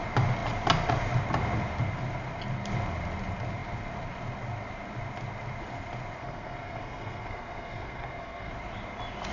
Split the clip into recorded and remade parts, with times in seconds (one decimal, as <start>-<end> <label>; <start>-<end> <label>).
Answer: 0.0-6.2 recorded; 6.2-8.5 remade; 8.5-9.3 recorded